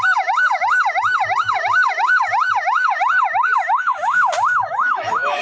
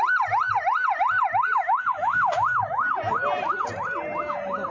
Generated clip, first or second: first